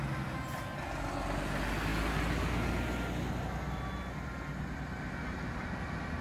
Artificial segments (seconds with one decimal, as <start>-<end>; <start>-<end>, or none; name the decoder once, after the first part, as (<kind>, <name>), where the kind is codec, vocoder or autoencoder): none